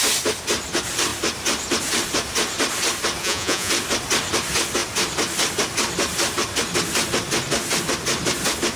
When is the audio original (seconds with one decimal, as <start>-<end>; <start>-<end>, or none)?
0.0-3.2; 3.7-8.8